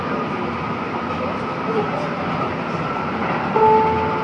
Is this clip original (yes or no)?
yes